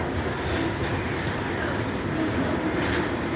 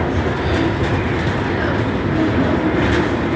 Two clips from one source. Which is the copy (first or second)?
first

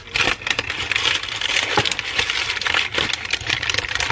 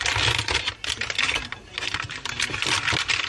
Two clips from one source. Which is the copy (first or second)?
first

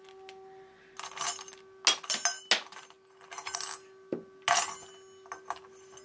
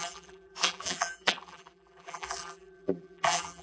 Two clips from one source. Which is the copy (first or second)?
second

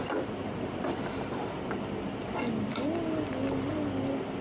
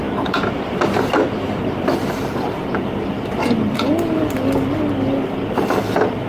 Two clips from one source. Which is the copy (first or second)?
second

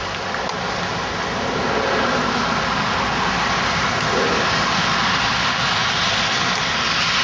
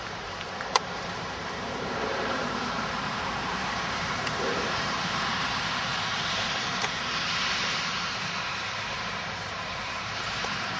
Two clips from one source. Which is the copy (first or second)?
second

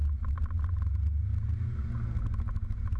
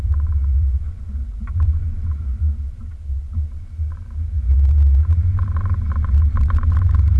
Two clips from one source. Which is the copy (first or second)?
second